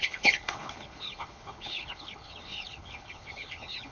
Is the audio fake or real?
fake